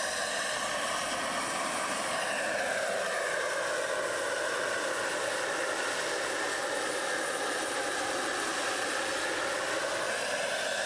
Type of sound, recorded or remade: recorded